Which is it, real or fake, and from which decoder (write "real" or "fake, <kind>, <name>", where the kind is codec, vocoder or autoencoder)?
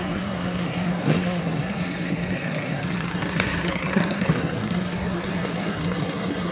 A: fake, codec, SNAC